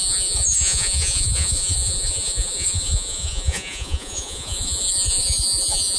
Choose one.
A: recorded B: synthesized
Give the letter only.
B